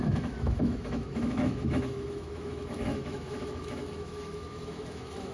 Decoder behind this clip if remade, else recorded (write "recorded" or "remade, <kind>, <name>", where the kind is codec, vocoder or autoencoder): remade, autoencoder, DAC-VAE